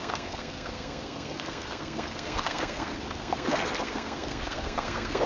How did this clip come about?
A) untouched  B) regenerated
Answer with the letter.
B